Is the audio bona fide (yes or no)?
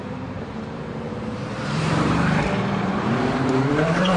no